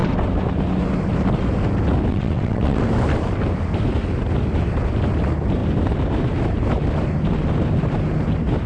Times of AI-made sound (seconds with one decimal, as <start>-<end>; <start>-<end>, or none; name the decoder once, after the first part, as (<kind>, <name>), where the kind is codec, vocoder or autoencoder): 2.1-2.8 (vocoder, WaveNeXt)

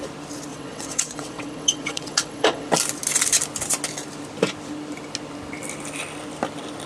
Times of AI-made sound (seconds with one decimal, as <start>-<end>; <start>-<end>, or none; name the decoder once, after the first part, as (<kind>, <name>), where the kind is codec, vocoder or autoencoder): 0.5-2.7 (vocoder, WaveNeXt)

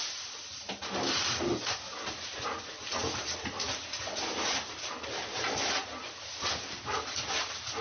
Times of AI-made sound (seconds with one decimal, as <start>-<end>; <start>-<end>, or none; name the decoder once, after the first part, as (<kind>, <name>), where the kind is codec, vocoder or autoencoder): none

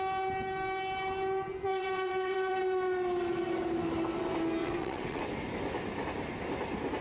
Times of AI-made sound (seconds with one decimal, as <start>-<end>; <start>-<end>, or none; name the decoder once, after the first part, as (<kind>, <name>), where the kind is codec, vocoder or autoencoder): 1.7-2.6 (vocoder, WaveNeXt); 4.6-5.2

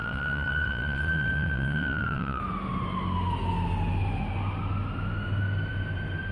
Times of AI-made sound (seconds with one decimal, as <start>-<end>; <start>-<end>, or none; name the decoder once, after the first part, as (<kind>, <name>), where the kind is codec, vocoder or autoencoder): 0.0-2.4 (vocoder, WaveNeXt)